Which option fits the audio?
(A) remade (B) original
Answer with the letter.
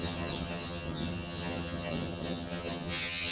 A